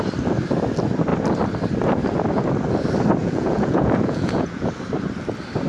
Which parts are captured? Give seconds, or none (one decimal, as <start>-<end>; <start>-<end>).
0.0-3.2; 4.7-5.7